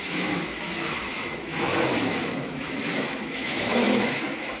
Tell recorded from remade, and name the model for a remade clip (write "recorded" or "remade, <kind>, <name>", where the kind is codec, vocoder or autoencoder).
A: remade, autoencoder, DAC-VAE